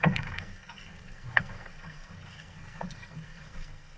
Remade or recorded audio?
remade